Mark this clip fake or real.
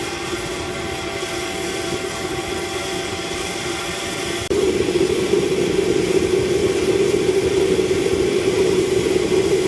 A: real